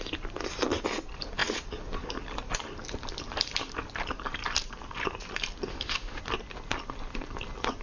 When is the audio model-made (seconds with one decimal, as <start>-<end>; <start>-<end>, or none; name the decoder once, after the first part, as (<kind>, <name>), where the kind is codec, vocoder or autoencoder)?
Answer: 5.7-6.2 (autoencoder, DAC-VAE)